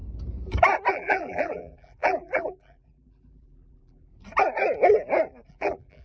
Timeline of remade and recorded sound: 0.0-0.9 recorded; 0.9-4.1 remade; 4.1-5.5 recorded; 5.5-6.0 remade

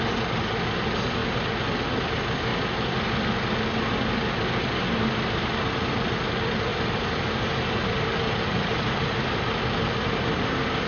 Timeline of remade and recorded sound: 0.0-6.7 recorded; 6.7-8.9 remade; 8.9-10.9 recorded

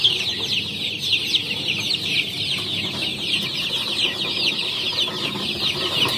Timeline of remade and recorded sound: 0.0-6.2 recorded

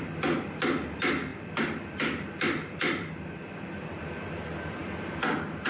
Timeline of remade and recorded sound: 0.0-1.3 recorded; 1.3-4.3 remade; 4.3-5.7 recorded